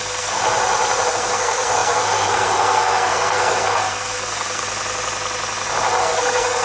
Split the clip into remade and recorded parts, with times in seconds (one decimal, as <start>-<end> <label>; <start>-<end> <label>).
0.0-0.4 remade; 0.4-1.1 recorded; 1.1-4.6 remade; 4.6-6.0 recorded; 6.0-6.6 remade